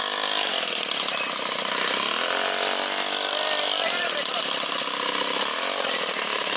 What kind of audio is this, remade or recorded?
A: recorded